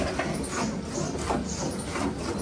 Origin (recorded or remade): recorded